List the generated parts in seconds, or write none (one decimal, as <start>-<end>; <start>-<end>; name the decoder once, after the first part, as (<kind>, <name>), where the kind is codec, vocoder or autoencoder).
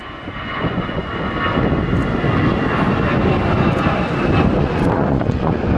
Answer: 0.0-1.1 (vocoder, Vocos); 4.6-5.8